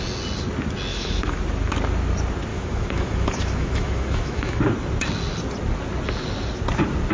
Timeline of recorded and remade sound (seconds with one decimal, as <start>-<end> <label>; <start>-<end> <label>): 0.0-0.9 recorded; 0.9-1.4 remade; 1.4-2.5 recorded; 2.5-4.6 remade; 4.6-7.1 recorded